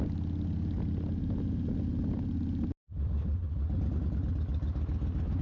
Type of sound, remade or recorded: recorded